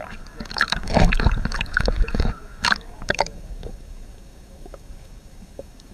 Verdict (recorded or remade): remade